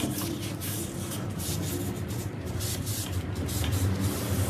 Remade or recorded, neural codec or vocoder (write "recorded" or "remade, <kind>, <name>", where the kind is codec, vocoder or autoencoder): recorded